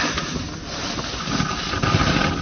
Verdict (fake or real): real